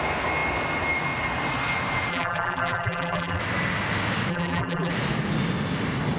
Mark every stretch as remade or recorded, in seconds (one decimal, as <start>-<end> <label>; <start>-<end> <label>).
0.0-2.1 recorded; 2.1-3.4 remade; 3.4-4.3 recorded; 4.3-4.9 remade; 4.9-6.2 recorded